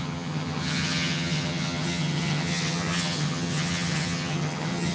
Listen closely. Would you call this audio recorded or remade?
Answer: remade